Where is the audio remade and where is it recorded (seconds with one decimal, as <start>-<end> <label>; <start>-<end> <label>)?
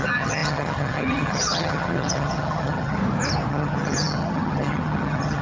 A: 0.0-3.0 remade; 3.0-3.5 recorded; 3.5-5.4 remade